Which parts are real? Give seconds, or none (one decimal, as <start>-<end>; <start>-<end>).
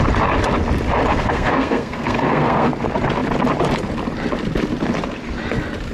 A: 0.0-1.1; 2.7-5.9